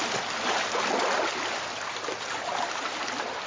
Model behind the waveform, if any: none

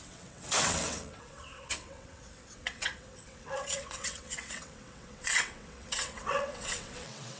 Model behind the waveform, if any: vocoder, WaveNeXt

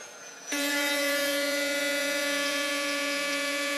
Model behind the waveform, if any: vocoder, Vocos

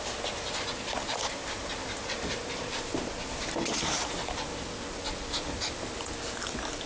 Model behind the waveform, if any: none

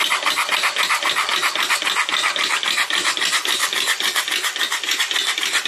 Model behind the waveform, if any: none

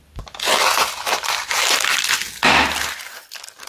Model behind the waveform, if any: none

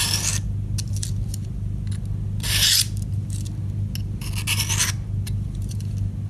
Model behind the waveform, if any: none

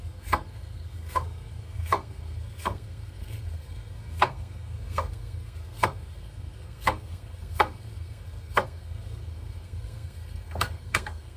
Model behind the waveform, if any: codec, SNAC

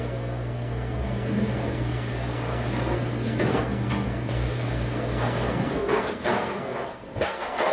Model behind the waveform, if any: codec, SNAC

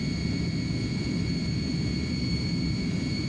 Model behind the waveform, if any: vocoder, BigVGAN v2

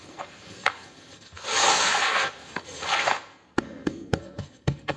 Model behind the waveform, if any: codec, SNAC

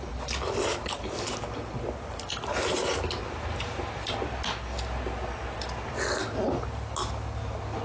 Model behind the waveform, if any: none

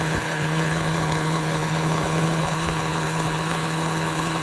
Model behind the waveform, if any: codec, HILCodec